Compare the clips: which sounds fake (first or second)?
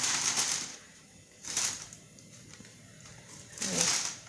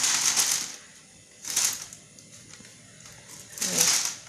first